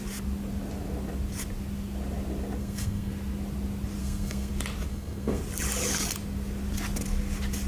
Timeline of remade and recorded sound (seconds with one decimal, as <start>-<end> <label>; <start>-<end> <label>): 0.0-2.6 recorded; 2.6-3.1 remade; 3.1-4.0 recorded; 4.0-4.5 remade; 4.5-4.9 recorded; 4.9-5.4 remade; 5.4-7.7 recorded